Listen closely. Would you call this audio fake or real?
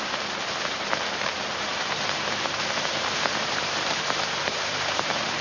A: fake